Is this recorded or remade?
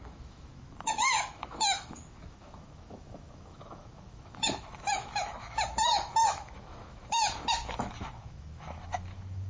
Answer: remade